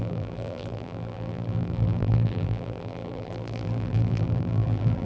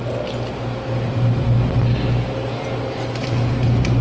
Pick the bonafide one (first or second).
second